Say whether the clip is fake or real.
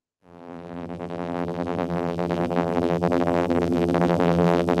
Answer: fake